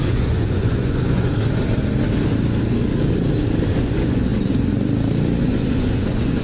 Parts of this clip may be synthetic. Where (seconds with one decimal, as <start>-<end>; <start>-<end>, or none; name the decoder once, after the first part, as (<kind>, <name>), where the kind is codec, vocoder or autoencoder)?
0.0-1.3 (vocoder, Vocos); 3.8-4.3; 5.4-6.4